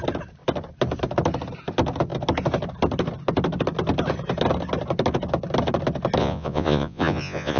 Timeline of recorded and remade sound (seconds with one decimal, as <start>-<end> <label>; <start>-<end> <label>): 0.0-6.2 recorded; 6.2-7.6 remade